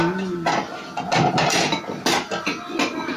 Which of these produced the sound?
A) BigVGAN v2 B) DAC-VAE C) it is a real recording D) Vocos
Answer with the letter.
C